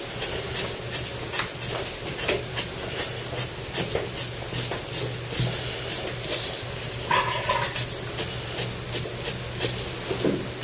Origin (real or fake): real